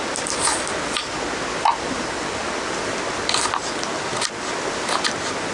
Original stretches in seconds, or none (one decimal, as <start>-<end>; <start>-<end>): 0.0-5.5